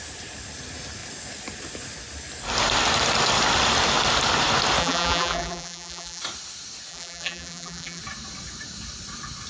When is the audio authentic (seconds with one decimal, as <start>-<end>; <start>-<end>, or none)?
0.0-4.8; 6.2-6.9; 8.0-9.5